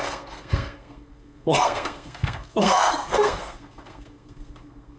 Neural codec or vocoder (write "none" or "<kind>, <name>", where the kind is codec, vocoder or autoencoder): codec, SNAC